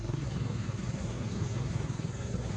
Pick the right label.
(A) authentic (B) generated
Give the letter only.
B